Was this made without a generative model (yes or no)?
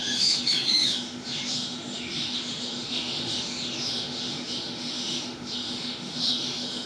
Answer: no